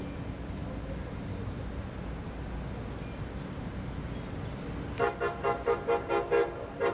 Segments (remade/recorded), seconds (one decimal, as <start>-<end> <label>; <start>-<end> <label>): 0.0-6.9 recorded